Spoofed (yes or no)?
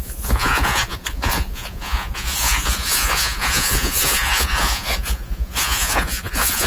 yes